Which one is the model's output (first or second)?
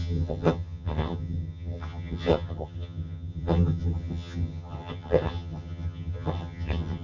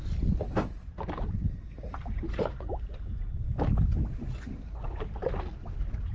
first